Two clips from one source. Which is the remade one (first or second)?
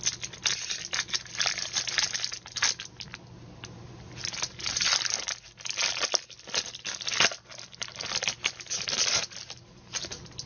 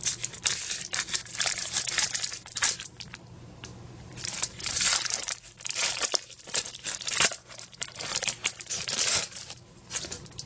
second